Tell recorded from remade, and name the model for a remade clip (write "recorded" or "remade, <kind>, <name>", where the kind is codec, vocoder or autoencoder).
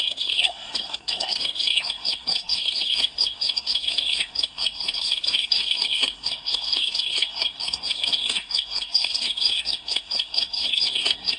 remade, codec, SNAC